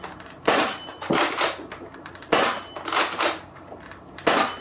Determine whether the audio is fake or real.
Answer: real